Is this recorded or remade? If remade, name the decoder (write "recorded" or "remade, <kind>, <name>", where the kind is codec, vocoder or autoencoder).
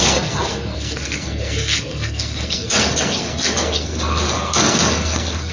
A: remade, codec, SNAC